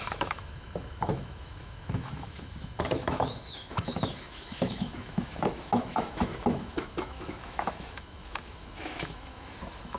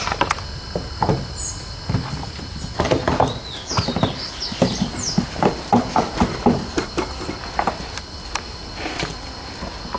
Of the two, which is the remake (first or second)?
first